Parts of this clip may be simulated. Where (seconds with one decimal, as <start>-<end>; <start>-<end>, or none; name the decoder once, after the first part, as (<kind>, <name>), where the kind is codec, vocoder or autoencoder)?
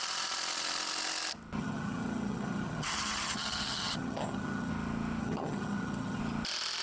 1.6-4.7 (vocoder, HiFi-GAN); 5.2-6.2